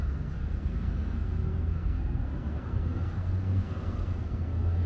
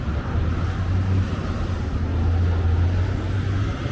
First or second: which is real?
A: second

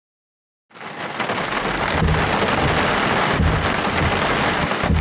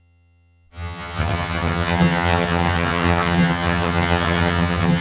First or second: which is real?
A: first